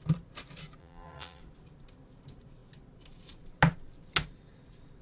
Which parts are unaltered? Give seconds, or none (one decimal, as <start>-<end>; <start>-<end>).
0.0-0.8; 1.4-5.0